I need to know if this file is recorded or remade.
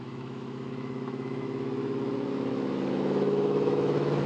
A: remade